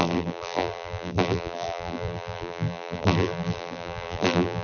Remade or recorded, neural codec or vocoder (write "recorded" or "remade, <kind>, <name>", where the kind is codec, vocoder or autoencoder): remade, vocoder, BigVGAN v2